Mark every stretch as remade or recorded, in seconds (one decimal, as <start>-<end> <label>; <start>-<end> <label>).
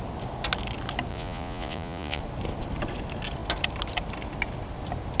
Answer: 0.0-1.1 recorded; 1.1-2.2 remade; 2.2-5.2 recorded